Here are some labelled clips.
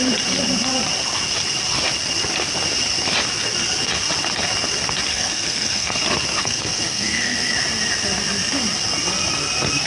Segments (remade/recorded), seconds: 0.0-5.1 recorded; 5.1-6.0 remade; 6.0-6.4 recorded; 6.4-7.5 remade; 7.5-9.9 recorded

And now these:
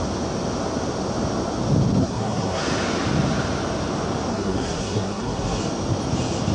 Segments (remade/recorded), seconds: 0.0-2.0 recorded; 2.0-2.6 remade; 2.6-4.3 recorded; 4.3-5.6 remade; 5.6-6.5 recorded

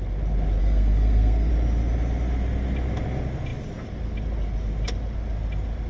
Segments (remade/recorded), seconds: 0.0-0.6 recorded; 0.6-1.5 remade; 1.5-5.9 recorded